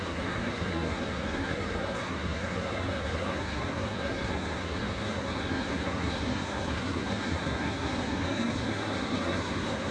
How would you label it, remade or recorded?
remade